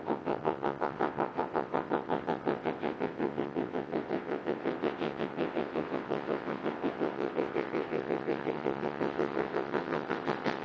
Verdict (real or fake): fake